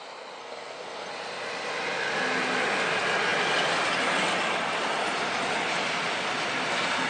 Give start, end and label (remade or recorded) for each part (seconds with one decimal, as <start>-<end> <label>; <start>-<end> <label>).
0.0-0.4 recorded; 0.4-1.1 remade; 1.1-7.1 recorded